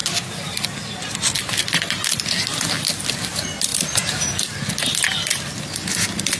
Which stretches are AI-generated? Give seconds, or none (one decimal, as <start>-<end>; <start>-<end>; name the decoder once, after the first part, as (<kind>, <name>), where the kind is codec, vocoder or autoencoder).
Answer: none